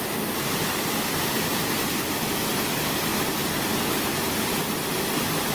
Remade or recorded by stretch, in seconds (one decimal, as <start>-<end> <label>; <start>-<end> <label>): 0.0-5.5 recorded